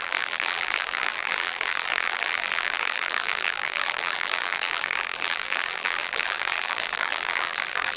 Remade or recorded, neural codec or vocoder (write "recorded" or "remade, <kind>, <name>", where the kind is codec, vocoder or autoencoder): remade, vocoder, BigVGAN v2